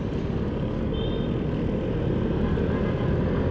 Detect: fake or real real